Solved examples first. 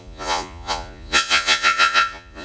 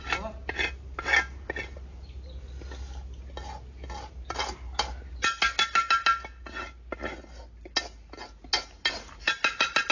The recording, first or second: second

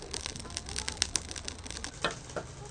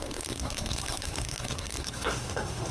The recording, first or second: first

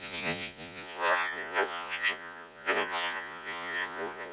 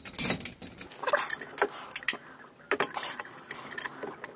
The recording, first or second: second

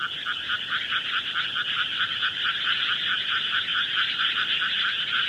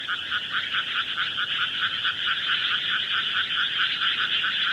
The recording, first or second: second